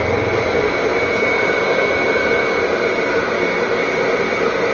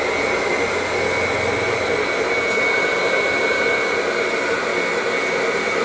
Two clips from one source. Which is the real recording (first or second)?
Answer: second